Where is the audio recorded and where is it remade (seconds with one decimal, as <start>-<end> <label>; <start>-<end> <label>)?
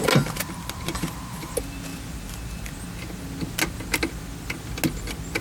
0.0-5.4 recorded